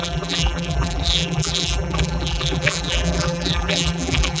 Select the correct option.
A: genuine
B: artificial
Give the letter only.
B